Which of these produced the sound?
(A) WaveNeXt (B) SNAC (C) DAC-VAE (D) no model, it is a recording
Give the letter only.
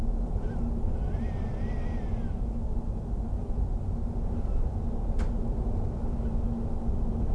D